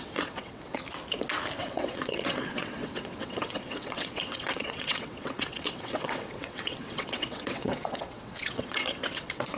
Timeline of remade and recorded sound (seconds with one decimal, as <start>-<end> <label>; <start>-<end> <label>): 0.0-0.8 remade; 0.8-1.6 recorded; 1.6-9.6 remade